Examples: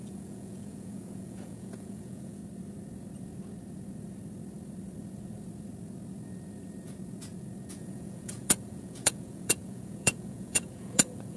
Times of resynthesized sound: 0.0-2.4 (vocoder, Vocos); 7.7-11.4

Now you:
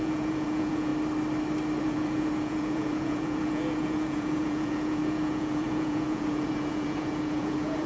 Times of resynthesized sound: 0.0-0.9 (vocoder, Vocos); 1.8-7.9

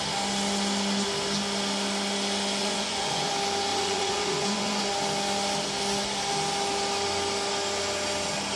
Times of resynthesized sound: 2.6-3.3 (vocoder, Vocos); 3.7-4.8

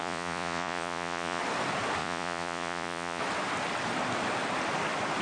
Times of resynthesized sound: 0.0-1.4 (vocoder, Vocos); 2.0-3.2